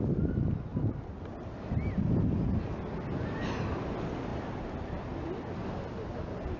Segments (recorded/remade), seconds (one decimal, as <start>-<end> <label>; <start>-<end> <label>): 0.0-6.6 recorded